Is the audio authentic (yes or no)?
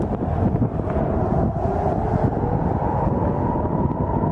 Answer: yes